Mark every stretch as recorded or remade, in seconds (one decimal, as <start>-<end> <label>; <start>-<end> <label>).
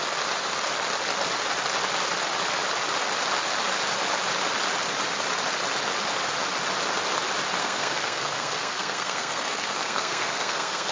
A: 0.0-7.6 recorded; 7.6-10.9 remade